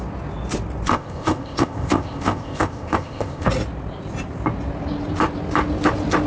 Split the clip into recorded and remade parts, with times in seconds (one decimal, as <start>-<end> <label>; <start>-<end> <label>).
0.0-0.9 recorded; 0.9-3.5 remade; 3.5-6.3 recorded